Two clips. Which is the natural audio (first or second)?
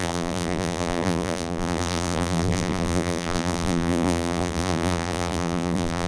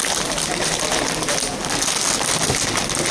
second